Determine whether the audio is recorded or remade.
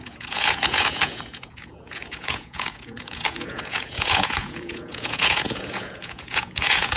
remade